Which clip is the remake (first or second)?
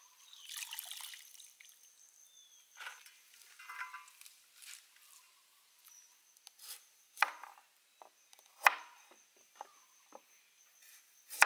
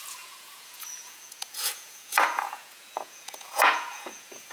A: second